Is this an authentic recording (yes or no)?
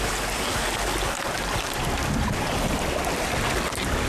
yes